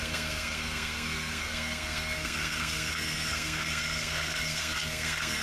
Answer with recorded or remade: remade